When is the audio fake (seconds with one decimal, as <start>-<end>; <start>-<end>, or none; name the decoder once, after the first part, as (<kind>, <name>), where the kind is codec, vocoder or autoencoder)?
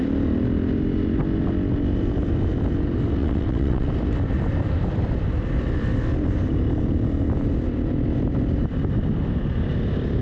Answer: 3.2-3.9 (vocoder, WaveNeXt)